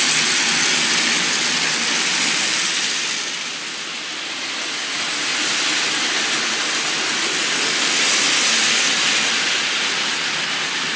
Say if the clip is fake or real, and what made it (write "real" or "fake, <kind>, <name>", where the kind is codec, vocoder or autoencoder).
real